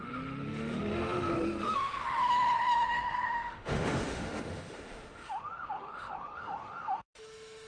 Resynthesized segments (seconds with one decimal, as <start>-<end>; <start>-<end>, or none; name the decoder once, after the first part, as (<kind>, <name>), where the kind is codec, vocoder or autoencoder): 0.0-7.7 (autoencoder, DAC-VAE)